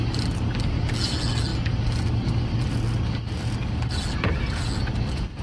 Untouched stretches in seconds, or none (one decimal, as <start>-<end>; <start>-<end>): 0.0-5.4